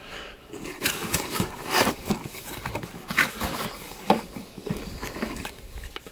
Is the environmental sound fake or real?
fake